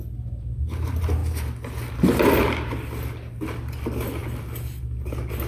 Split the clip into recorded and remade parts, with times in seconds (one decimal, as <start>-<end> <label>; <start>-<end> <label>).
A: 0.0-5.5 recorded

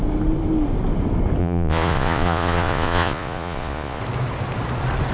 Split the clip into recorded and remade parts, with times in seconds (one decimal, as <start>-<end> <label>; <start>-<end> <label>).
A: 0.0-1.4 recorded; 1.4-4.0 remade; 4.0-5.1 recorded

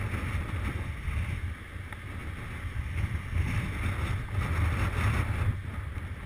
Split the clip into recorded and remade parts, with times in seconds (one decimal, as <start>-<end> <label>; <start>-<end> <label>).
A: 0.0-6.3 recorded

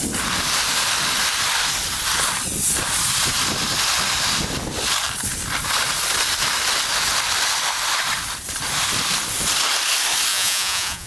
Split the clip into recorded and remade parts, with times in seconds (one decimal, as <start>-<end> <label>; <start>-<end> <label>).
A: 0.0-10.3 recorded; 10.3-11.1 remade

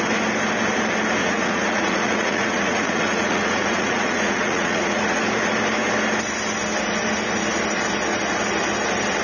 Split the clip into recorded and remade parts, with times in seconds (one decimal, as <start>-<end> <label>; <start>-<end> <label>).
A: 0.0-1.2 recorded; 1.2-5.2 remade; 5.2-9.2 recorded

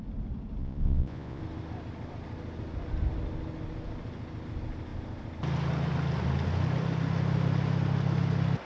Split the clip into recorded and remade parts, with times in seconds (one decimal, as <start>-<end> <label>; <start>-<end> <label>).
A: 0.0-0.6 recorded; 0.6-1.4 remade; 1.4-8.7 recorded

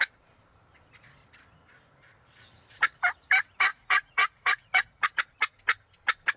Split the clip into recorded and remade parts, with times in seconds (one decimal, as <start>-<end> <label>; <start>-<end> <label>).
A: 0.0-3.7 recorded; 3.7-5.2 remade; 5.2-6.4 recorded